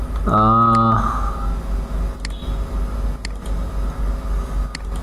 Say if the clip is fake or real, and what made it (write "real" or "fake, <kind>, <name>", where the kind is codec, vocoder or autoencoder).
real